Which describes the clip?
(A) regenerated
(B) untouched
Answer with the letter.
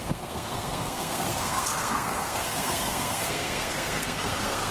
A